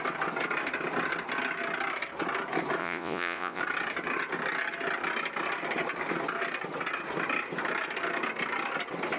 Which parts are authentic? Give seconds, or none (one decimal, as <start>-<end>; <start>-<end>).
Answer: 0.0-2.8; 3.6-9.2